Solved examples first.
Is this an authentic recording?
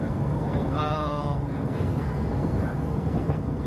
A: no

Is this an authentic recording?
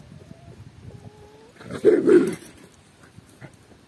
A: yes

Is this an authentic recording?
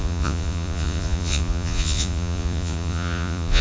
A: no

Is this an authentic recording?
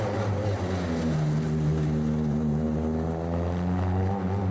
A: yes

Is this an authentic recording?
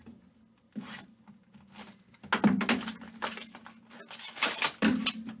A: yes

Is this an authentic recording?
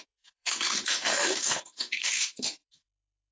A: no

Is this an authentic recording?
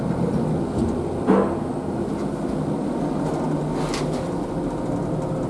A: yes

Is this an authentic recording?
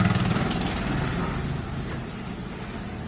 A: yes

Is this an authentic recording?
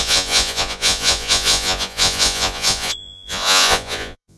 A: no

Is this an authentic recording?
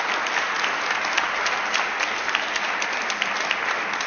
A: yes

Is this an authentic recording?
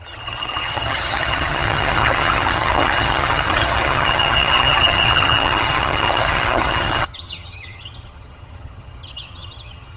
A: no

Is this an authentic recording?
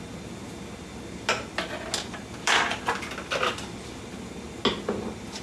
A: yes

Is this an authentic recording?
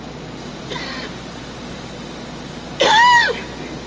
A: yes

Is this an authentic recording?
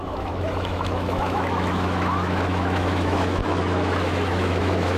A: no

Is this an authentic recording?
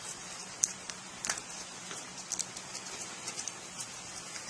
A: no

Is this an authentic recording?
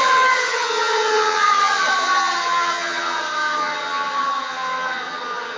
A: no